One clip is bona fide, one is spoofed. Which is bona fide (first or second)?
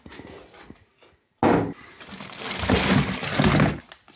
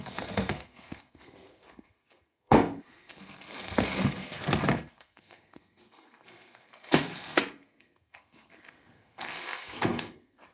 first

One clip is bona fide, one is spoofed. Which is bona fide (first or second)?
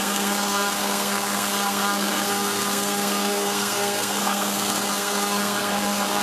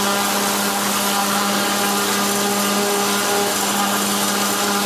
second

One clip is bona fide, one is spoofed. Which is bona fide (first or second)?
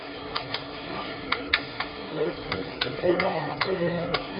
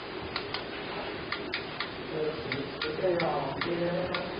second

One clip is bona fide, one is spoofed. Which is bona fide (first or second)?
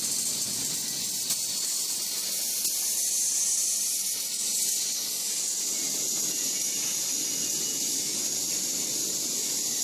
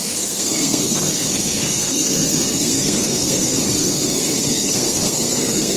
first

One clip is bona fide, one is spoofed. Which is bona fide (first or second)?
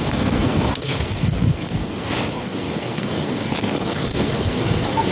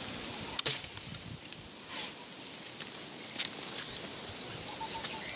second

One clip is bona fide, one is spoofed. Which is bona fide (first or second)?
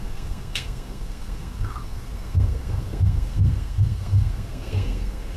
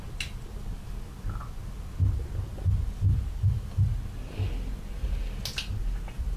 second